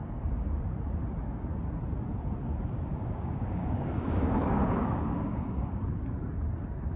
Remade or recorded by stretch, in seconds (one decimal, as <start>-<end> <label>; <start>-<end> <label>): 0.0-0.6 remade; 0.6-2.9 recorded; 2.9-5.8 remade; 5.8-7.0 recorded